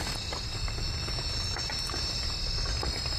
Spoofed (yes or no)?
no